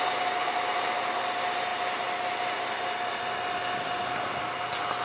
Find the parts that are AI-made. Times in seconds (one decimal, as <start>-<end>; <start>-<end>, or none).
none